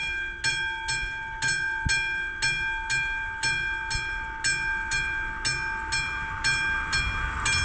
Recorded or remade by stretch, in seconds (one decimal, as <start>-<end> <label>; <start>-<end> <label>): 0.0-7.6 recorded